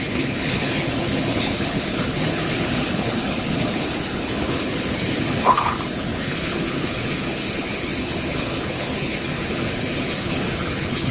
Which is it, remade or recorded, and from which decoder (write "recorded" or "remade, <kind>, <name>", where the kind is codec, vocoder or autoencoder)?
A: remade, codec, HILCodec